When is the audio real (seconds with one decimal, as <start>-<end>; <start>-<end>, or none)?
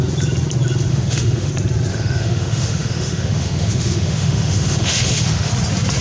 0.0-0.9; 1.5-1.9; 5.5-6.0